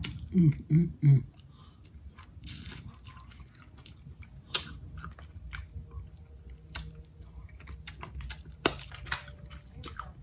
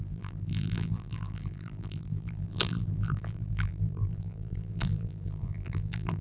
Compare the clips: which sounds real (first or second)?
first